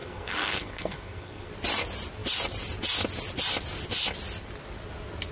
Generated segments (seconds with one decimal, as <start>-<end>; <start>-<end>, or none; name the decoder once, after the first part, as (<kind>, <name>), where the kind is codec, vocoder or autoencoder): 0.0-1.5 (codec, SNAC)